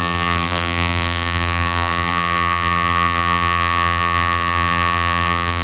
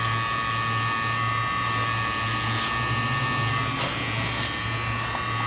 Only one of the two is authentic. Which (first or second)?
second